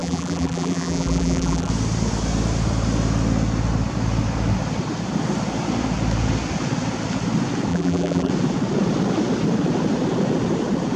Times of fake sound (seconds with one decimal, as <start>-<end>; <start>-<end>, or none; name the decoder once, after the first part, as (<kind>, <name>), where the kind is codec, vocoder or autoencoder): 0.0-1.7 (vocoder, BigVGAN v2); 7.7-8.3